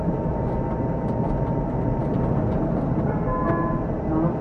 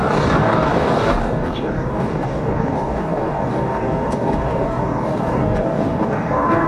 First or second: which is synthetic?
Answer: second